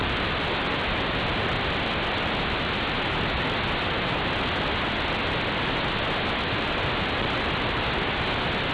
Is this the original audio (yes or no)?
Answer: yes